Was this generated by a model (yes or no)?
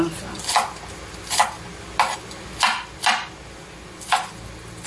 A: yes